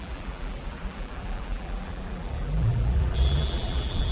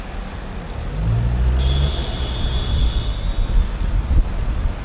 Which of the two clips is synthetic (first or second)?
first